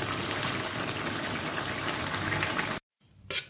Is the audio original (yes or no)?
no